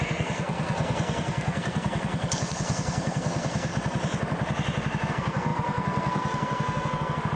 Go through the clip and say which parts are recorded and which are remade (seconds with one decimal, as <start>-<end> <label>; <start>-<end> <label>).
0.0-3.7 remade; 3.7-5.1 recorded; 5.1-7.4 remade

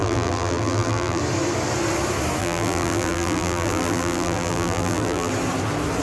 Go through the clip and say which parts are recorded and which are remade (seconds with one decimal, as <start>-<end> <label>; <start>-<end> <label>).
0.0-1.2 remade; 1.2-2.4 recorded; 2.4-5.3 remade; 5.3-6.0 recorded

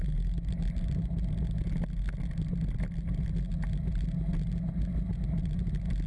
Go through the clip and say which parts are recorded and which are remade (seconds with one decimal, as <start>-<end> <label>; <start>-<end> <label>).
0.0-6.1 recorded

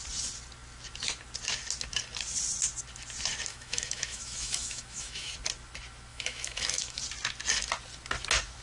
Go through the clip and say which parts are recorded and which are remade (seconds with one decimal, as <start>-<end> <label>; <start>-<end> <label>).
0.0-3.5 recorded; 3.5-5.3 remade; 5.3-6.1 recorded; 6.1-7.0 remade; 7.0-8.6 recorded